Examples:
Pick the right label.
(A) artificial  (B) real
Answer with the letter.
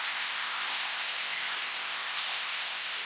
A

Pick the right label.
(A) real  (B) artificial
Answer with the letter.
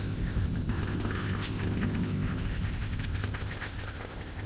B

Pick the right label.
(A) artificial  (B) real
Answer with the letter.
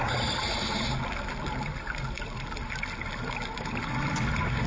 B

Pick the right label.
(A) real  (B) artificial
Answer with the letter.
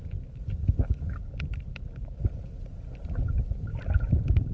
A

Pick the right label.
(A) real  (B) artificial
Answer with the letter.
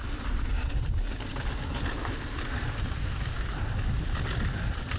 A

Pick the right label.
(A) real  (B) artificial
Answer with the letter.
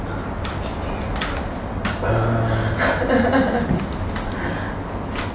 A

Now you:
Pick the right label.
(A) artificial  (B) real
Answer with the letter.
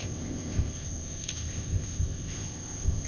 A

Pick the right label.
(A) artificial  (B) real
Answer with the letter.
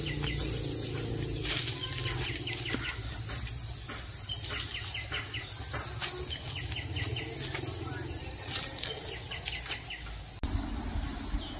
B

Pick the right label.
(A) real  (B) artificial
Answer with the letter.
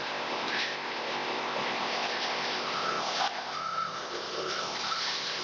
B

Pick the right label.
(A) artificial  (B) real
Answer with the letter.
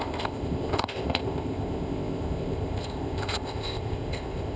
A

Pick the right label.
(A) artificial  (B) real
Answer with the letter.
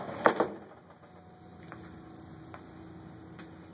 B